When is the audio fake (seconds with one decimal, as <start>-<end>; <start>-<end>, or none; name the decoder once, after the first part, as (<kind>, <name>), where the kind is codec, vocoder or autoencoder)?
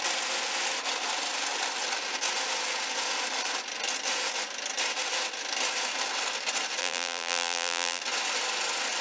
6.8-8.0 (vocoder, BigVGAN v2)